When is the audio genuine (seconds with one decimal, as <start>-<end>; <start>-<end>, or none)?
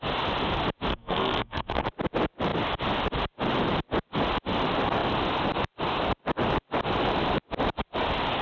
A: 0.0-0.9; 1.9-8.4